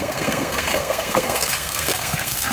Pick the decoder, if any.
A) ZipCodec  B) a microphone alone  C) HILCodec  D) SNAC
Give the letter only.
D